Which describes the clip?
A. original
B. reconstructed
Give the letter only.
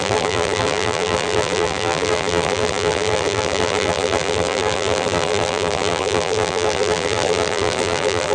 B